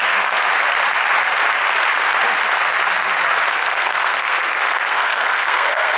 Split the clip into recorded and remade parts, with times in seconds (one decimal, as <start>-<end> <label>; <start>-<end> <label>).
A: 0.0-0.4 remade; 0.4-3.5 recorded; 3.5-6.0 remade